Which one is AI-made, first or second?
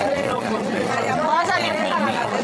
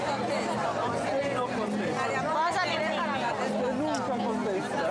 first